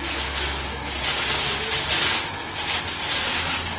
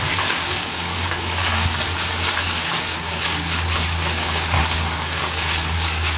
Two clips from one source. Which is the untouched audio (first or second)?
first